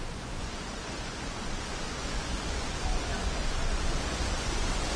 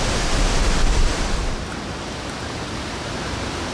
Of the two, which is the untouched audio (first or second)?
second